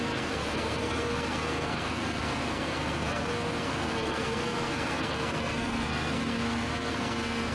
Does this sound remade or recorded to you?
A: remade